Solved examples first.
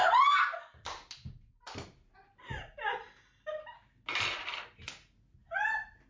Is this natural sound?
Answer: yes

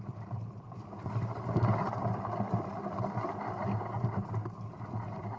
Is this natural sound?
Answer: yes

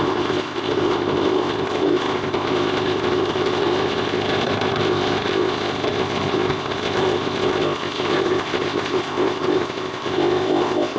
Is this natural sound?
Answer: no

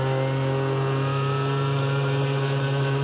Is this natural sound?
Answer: yes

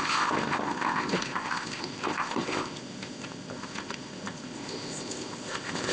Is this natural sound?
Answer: no